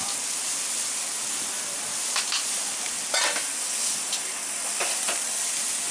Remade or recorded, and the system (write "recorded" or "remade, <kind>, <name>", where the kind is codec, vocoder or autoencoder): recorded